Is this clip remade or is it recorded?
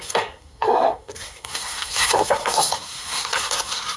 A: remade